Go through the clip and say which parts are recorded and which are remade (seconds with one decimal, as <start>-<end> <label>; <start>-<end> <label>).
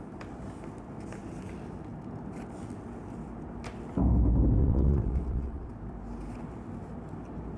0.0-4.6 recorded; 4.6-5.7 remade; 5.7-7.6 recorded